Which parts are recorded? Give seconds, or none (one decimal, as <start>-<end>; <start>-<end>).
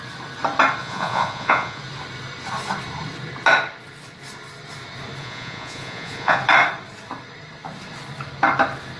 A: 0.0-0.8; 1.8-5.2; 6.4-9.0